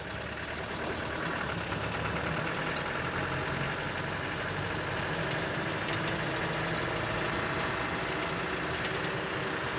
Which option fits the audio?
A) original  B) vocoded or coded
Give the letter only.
A